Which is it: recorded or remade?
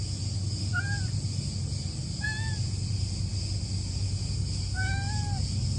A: recorded